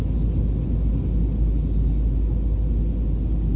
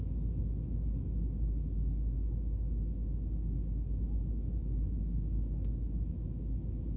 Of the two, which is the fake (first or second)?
second